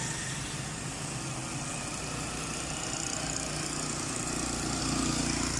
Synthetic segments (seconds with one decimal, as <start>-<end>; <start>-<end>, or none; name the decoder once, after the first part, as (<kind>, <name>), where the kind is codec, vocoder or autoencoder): none